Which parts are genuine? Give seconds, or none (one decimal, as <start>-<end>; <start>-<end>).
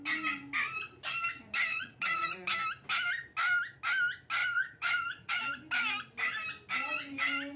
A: 0.0-1.7; 2.5-4.4; 5.3-7.6